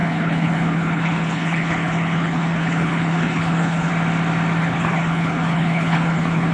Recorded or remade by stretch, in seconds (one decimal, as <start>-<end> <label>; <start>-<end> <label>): 0.0-3.9 remade; 3.9-4.6 recorded; 4.6-6.5 remade